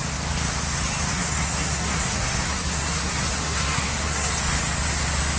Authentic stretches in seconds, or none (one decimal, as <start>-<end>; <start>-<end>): 0.0-1.1; 4.3-5.4